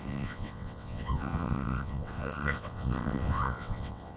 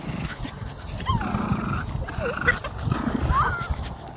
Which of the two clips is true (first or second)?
second